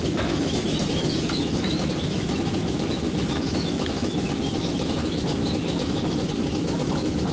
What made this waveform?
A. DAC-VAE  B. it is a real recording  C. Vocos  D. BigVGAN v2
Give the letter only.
A